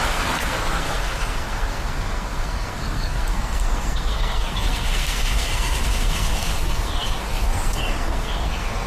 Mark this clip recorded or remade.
remade